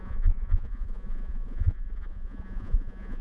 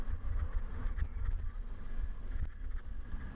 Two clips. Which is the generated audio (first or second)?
first